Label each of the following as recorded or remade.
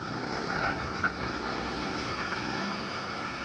remade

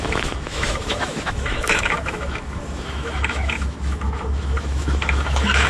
remade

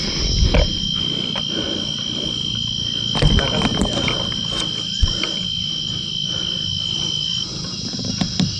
recorded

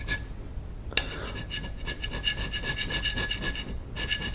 recorded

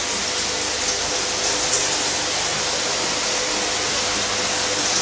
recorded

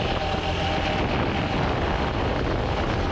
recorded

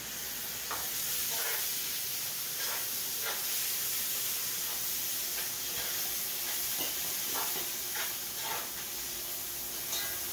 recorded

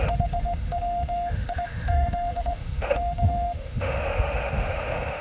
remade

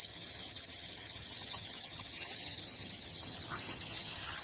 remade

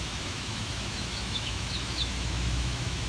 remade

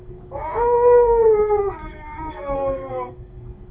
remade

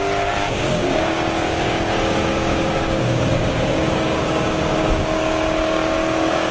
remade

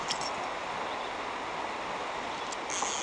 recorded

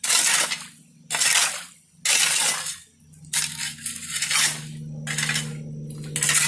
recorded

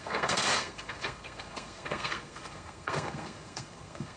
remade